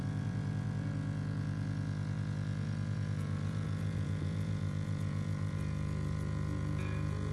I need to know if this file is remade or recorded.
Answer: remade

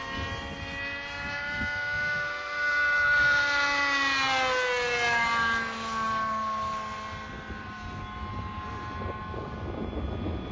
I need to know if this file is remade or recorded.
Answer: recorded